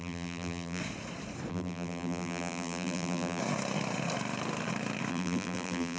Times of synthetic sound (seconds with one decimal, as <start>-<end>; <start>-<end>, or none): 0.0-0.8; 1.5-3.4; 5.1-6.0